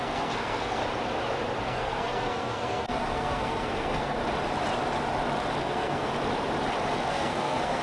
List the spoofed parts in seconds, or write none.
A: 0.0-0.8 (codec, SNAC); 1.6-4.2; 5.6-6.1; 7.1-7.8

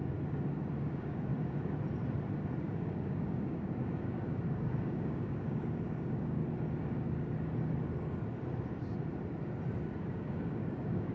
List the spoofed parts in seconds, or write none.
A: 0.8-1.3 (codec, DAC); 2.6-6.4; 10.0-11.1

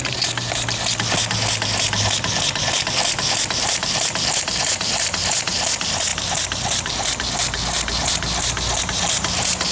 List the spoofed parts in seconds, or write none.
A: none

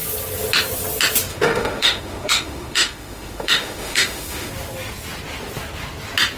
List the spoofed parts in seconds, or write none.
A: 1.3-4.5 (autoencoder, DAC-VAE)

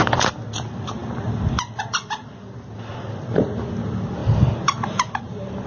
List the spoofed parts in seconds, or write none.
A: 1.0-2.9 (vocoder, BigVGAN v2); 4.2-5.2

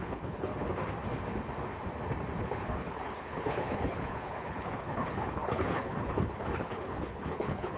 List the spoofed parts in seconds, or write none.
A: 0.0-0.5 (codec, HILCodec); 2.5-7.8